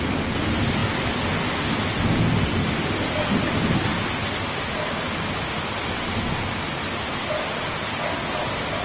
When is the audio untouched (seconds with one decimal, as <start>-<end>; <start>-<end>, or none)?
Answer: 0.0-8.8